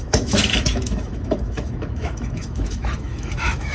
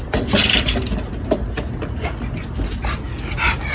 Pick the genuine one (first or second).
second